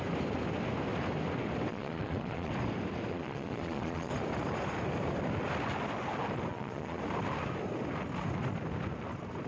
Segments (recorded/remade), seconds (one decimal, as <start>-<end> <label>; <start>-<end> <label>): 0.0-1.7 recorded; 1.7-2.5 remade; 2.5-3.1 recorded; 3.1-4.1 remade; 4.1-6.5 recorded; 6.5-7.0 remade; 7.0-9.5 recorded